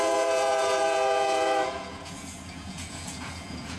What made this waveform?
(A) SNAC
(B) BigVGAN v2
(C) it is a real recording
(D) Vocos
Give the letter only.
D